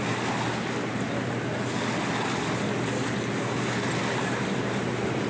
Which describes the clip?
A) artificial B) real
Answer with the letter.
B